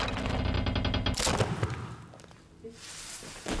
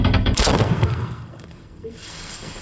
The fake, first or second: second